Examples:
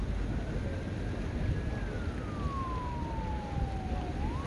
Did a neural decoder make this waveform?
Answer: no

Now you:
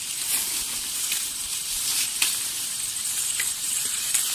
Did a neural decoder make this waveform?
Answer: yes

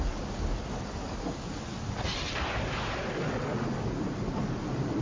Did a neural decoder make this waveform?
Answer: no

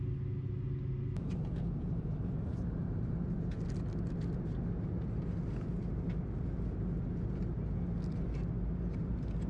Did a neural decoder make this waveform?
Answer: no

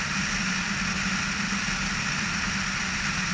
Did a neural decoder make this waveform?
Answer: no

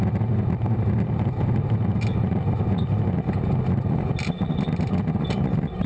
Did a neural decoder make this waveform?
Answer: no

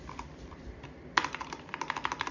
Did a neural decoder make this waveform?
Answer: yes